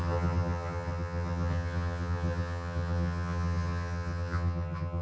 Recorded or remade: remade